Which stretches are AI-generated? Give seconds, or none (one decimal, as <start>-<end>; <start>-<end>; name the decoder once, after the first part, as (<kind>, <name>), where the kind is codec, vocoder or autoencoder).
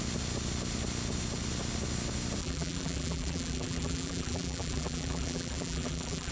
2.4-6.3 (vocoder, BigVGAN v2)